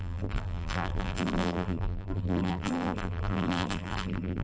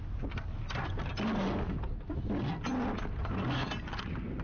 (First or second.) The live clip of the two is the second